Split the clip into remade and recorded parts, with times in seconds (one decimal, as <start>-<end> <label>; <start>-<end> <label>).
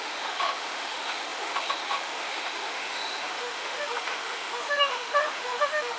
0.0-6.0 remade